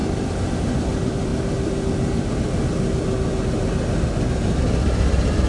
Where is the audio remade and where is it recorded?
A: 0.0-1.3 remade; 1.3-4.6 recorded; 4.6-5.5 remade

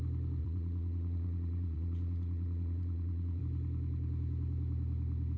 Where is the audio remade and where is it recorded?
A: 0.0-0.4 recorded; 0.4-3.4 remade; 3.4-5.4 recorded

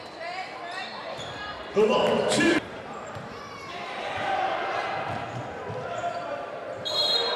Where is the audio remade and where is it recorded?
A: 0.0-1.0 recorded; 1.0-5.4 remade; 5.4-6.0 recorded; 6.0-6.6 remade; 6.6-7.4 recorded

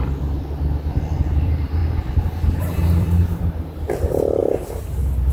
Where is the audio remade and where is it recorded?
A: 0.0-1.8 remade; 1.8-2.6 recorded; 2.6-4.4 remade; 4.4-5.3 recorded

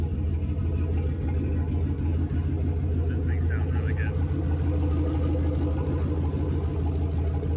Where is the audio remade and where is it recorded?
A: 0.0-7.6 recorded

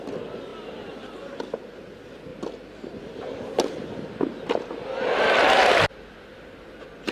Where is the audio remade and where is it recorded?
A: 0.0-0.5 recorded; 0.5-1.4 remade; 1.4-2.3 recorded; 2.3-5.8 remade; 5.8-7.1 recorded

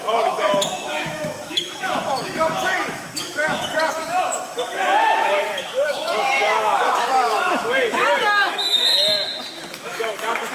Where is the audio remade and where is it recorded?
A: 0.0-8.9 remade; 8.9-9.7 recorded; 9.7-10.5 remade

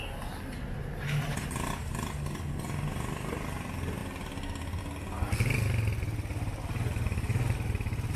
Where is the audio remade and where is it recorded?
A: 0.0-6.3 recorded; 6.3-7.7 remade; 7.7-8.2 recorded